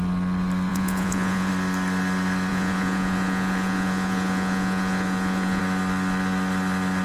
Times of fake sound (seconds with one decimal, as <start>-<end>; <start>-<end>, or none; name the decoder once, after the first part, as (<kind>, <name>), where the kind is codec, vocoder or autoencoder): 0.7-1.5 (vocoder, Vocos); 2.5-5.6